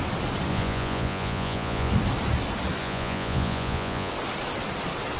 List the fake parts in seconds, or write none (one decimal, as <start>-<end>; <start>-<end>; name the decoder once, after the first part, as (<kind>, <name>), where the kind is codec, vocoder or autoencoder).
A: 0.5-1.9 (vocoder, Vocos); 2.8-4.1